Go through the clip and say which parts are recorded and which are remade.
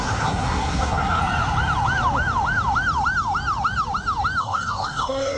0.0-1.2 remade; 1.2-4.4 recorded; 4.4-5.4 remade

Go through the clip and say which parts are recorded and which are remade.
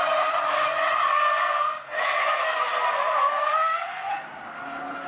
0.0-1.1 recorded; 1.1-2.6 remade; 2.6-3.2 recorded; 3.2-4.1 remade; 4.1-5.1 recorded